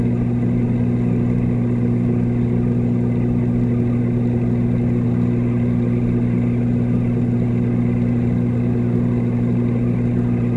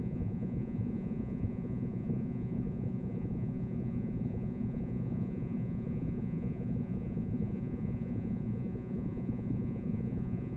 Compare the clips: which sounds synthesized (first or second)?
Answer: second